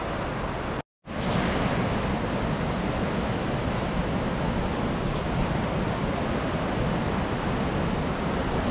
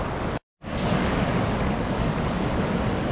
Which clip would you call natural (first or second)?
first